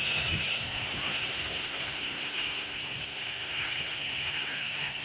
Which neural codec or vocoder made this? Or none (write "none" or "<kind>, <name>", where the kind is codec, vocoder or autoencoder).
codec, SNAC